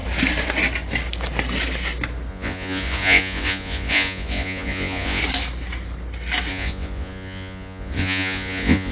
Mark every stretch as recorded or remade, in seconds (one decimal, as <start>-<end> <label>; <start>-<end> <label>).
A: 0.0-2.3 recorded; 2.3-5.2 remade; 5.2-6.5 recorded; 6.5-8.9 remade